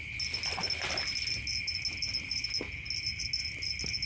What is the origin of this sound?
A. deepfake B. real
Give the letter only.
B